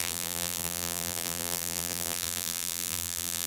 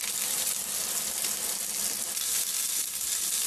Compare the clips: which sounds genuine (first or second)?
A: second